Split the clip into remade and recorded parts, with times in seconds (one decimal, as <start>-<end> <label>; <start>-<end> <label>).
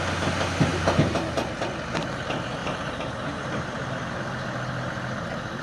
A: 0.0-0.7 recorded; 0.7-1.3 remade; 1.3-2.6 recorded; 2.6-4.2 remade; 4.2-5.6 recorded